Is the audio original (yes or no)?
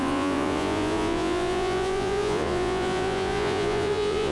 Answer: no